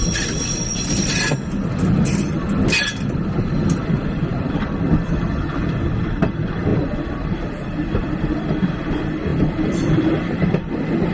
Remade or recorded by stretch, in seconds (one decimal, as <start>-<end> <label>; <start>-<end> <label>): 0.0-4.3 recorded; 4.3-6.0 remade; 6.0-9.3 recorded; 9.3-10.1 remade; 10.1-11.1 recorded

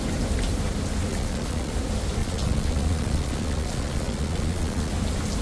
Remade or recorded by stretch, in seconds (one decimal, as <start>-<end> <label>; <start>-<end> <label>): 0.0-1.1 recorded; 1.1-1.7 remade; 1.7-2.2 recorded; 2.2-4.9 remade; 4.9-5.4 recorded

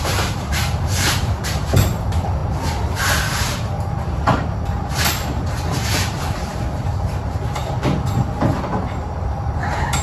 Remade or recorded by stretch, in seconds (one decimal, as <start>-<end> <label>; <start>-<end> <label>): 0.0-2.4 remade; 2.4-3.4 recorded; 3.4-7.6 remade; 7.6-9.0 recorded; 9.0-10.0 remade